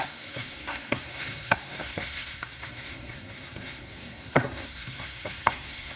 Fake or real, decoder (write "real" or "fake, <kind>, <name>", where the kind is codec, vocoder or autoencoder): fake, codec, SNAC